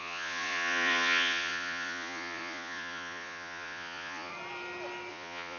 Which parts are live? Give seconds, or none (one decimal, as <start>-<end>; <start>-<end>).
4.3-5.1

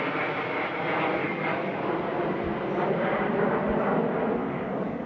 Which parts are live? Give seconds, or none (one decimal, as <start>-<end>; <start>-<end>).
0.0-1.2; 1.9-4.4

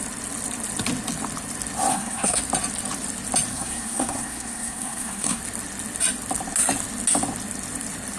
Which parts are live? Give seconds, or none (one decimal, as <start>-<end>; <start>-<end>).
0.0-1.9; 2.4-3.5; 5.4-8.2

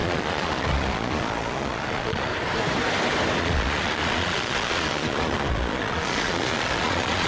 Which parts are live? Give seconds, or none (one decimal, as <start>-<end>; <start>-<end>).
2.3-3.4

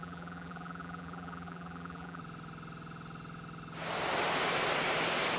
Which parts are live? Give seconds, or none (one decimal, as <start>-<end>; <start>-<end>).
2.2-5.4

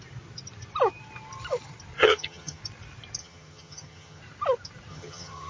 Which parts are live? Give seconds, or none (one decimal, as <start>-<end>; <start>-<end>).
0.0-2.0; 2.6-3.2; 4.2-4.9